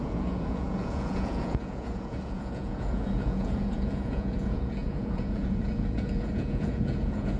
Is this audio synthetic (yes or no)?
yes